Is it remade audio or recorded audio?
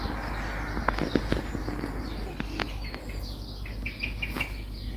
recorded